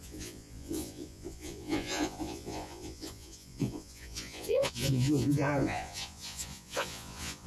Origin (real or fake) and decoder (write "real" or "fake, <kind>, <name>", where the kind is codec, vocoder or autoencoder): fake, vocoder, Vocos